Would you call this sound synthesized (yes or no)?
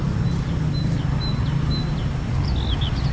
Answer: no